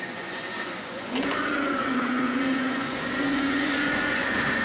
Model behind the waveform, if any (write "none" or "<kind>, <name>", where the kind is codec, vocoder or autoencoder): vocoder, Vocos